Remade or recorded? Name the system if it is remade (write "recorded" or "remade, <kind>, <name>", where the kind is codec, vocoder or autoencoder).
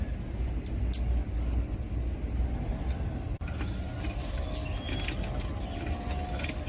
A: recorded